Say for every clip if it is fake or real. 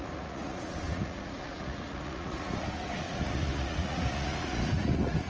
fake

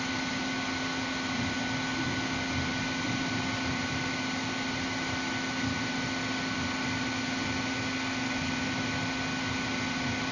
real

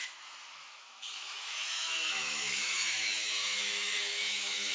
fake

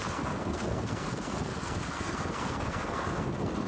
fake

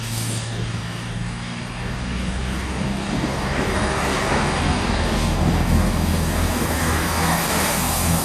fake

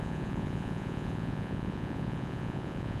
fake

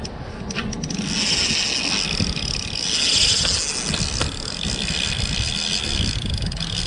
real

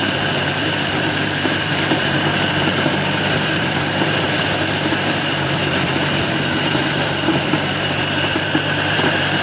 fake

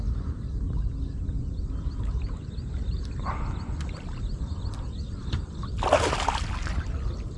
real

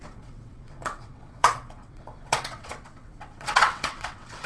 fake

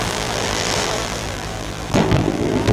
fake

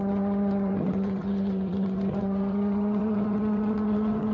fake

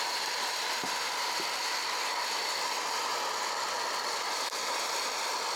fake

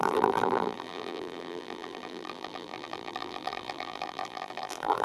fake